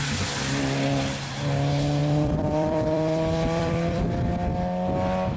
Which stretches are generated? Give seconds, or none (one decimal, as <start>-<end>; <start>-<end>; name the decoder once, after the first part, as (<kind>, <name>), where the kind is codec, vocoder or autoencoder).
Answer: 2.0-4.0 (vocoder, BigVGAN v2)